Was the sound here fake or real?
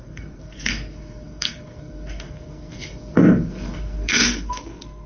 fake